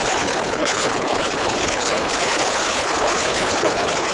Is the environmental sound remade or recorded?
remade